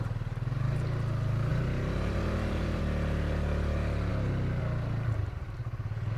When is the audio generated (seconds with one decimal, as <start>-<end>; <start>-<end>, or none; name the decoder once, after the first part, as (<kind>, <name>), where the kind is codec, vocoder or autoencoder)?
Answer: 1.5-2.8 (vocoder, BigVGAN v2)